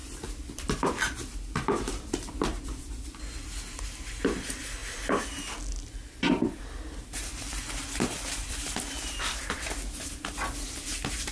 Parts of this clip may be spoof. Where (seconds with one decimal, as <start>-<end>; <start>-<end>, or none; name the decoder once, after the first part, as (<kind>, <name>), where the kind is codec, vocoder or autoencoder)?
0.0-2.9 (vocoder, BigVGAN v2); 7.2-9.4